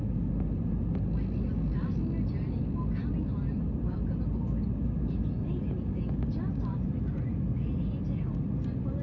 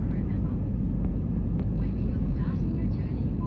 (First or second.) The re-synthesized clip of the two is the second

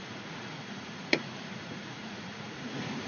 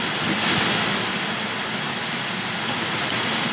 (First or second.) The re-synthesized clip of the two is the first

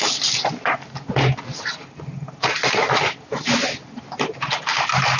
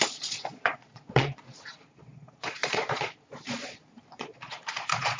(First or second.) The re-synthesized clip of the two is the second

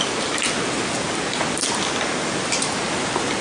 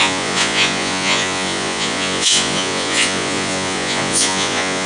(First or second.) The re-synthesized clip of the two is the second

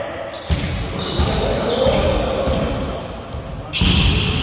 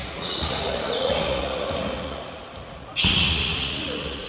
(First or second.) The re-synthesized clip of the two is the second